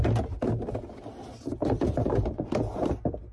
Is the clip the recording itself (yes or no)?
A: yes